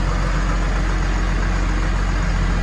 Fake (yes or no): no